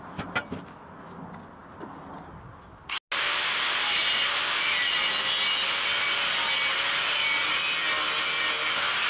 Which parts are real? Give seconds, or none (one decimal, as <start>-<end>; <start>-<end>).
0.0-9.1